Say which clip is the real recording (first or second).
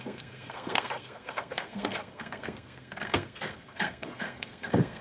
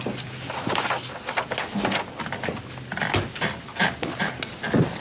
second